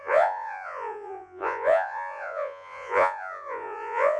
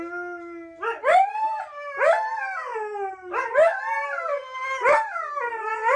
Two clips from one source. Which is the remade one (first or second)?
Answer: first